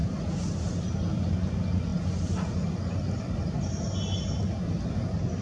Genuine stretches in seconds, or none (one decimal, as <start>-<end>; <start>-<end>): 0.0-5.4